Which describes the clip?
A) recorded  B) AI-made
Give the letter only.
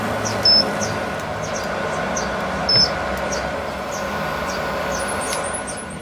A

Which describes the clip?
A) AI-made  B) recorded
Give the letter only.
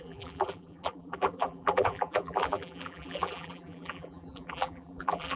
A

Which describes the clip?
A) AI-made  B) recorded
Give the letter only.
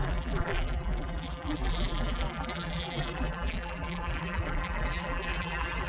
A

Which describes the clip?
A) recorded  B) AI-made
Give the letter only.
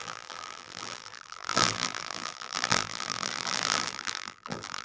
B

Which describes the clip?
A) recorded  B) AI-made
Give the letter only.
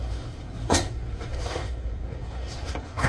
B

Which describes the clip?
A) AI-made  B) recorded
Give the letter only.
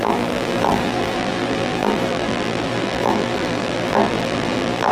A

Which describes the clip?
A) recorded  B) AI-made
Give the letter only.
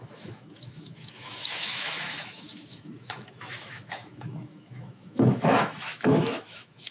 B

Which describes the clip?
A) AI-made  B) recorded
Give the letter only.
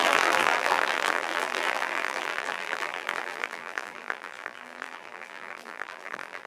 A